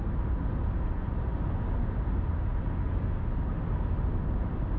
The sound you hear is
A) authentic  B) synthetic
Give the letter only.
A